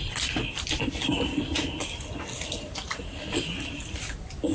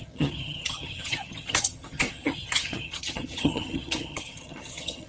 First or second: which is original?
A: first